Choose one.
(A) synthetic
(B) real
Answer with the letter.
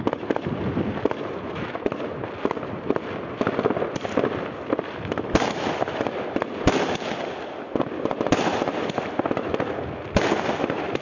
B